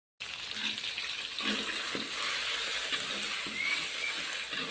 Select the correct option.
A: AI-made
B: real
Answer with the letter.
B